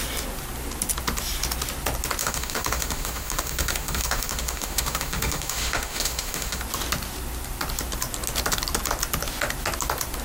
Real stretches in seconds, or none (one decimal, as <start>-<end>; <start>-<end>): 0.0-2.2; 6.6-10.2